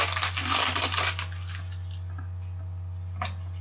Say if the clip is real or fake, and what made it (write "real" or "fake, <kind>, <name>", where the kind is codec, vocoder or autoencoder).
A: real